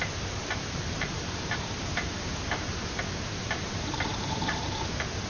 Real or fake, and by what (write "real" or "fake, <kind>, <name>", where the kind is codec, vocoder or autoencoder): fake, vocoder, BigVGAN v2